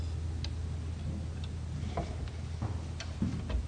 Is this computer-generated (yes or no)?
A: no